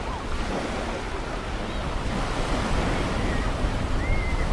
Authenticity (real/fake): real